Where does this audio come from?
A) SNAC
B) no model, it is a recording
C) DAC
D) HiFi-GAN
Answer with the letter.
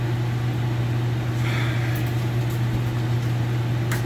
B